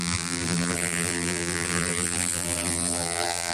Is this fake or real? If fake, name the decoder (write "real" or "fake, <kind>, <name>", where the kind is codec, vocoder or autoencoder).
fake, vocoder, BigVGAN v2